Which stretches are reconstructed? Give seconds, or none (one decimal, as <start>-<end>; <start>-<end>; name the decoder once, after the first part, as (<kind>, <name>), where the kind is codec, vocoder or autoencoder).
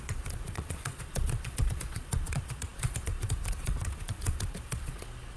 0.0-5.4 (vocoder, Vocos)